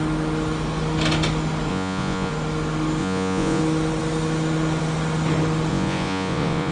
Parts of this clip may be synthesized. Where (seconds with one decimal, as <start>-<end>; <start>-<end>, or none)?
1.7-2.3; 3.0-3.6; 5.7-6.7